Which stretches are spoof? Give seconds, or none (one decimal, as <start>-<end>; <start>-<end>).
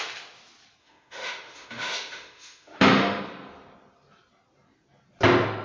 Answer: 0.8-3.2